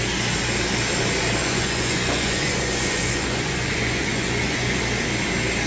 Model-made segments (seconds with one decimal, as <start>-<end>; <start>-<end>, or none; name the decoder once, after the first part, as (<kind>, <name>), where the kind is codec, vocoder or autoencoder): 1.4-4.8 (vocoder, Vocos)